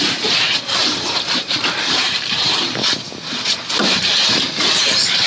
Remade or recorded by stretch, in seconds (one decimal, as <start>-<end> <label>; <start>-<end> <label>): 0.0-0.8 recorded; 0.8-2.1 remade; 2.1-5.3 recorded